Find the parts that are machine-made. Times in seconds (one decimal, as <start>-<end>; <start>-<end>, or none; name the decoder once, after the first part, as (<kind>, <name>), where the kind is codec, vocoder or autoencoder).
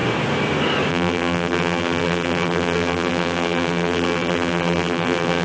0.9-5.4 (vocoder, BigVGAN v2)